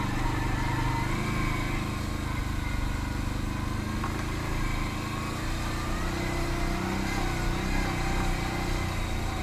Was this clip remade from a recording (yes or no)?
no